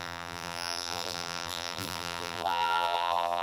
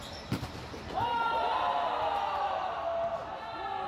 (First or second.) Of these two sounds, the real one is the second